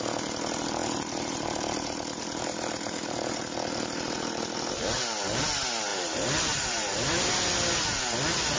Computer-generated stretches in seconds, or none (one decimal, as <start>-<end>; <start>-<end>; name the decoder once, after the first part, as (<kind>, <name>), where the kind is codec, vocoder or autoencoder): 0.8-4.3 (vocoder, BigVGAN v2); 5.9-7.3